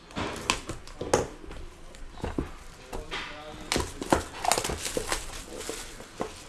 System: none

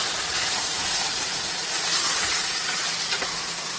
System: vocoder, Vocos